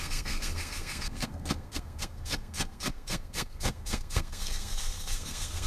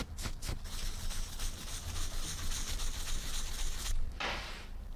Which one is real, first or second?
second